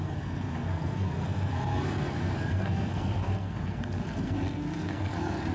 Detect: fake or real fake